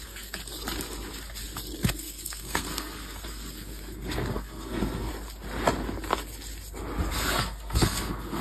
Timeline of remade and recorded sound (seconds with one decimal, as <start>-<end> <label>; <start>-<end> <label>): 0.0-0.4 remade; 0.4-1.9 recorded; 1.9-5.1 remade; 5.1-7.1 recorded; 7.1-8.4 remade